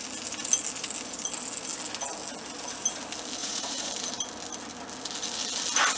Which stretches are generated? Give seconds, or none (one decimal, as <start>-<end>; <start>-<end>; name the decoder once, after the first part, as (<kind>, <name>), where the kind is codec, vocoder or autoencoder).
3.4-3.9 (vocoder, Vocos)